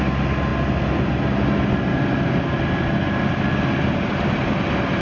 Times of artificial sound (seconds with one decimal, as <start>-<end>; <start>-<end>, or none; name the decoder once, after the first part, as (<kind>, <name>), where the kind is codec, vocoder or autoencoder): none